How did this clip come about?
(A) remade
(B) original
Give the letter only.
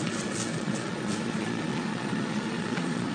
A